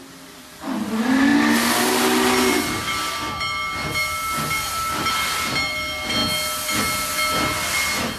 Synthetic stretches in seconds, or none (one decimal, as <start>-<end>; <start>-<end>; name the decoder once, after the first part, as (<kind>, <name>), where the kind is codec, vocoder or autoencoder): none